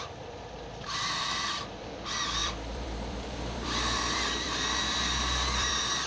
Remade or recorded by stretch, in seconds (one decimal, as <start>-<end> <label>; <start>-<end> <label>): 0.0-6.1 remade